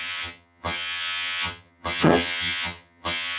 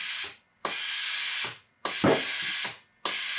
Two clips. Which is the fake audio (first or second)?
first